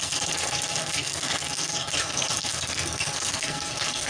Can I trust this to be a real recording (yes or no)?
no